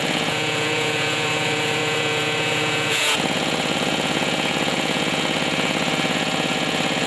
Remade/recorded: remade